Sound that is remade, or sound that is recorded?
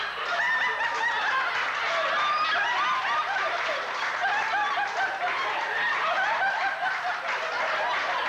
recorded